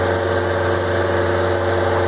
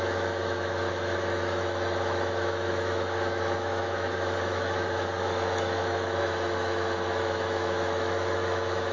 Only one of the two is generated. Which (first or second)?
second